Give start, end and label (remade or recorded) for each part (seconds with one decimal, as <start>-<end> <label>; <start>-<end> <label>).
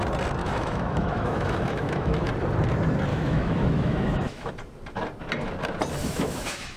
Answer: 0.0-0.4 recorded; 0.4-2.3 remade; 2.3-3.1 recorded; 3.1-4.5 remade; 4.5-6.0 recorded; 6.0-6.8 remade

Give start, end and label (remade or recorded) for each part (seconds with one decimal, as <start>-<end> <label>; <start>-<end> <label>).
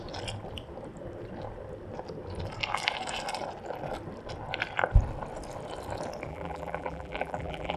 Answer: 0.0-6.3 recorded; 6.3-7.8 remade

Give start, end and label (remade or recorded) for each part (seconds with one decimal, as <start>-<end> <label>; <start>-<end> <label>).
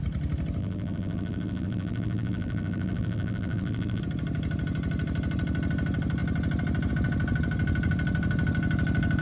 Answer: 0.0-0.6 recorded; 0.6-4.0 remade; 4.0-9.2 recorded